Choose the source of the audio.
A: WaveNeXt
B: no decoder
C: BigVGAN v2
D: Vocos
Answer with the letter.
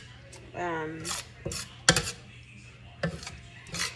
B